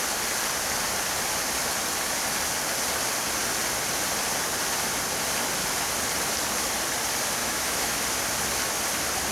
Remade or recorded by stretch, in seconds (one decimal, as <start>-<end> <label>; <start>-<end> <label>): 0.0-7.4 recorded; 7.4-8.0 remade; 8.0-9.3 recorded